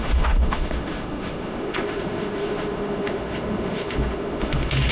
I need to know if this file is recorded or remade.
remade